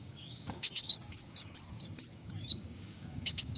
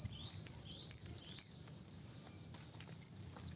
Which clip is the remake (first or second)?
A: first